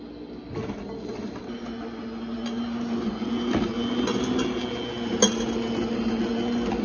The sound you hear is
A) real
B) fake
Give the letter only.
A